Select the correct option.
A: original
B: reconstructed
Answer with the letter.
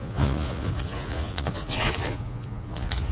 B